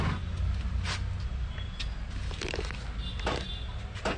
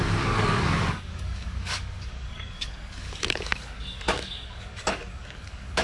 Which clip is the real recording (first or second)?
first